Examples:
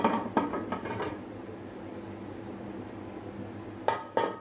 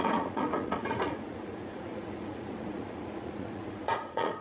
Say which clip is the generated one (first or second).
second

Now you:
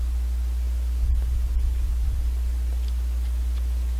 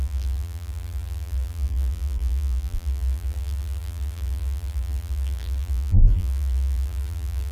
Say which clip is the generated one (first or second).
second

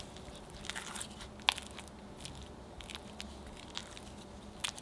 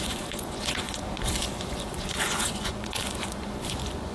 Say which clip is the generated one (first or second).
second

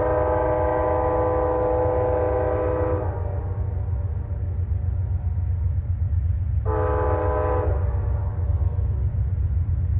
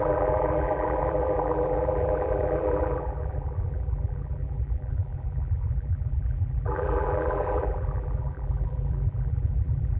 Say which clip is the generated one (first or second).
second